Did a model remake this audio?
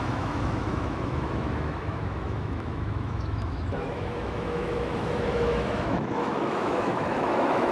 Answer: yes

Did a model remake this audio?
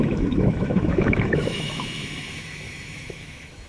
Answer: yes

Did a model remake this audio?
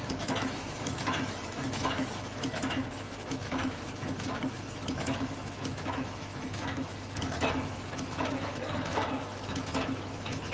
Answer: yes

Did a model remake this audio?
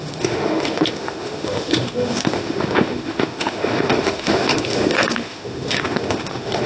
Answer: yes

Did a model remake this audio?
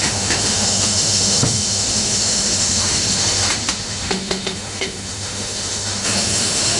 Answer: yes